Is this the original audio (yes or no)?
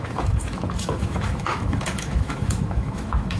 no